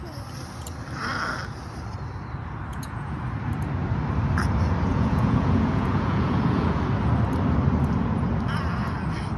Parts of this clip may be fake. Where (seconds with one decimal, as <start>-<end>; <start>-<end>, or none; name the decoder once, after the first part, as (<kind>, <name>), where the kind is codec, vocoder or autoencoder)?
2.7-3.2 (vocoder, Vocos); 4.9-6.8